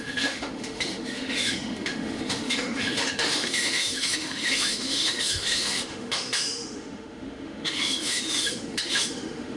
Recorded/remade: remade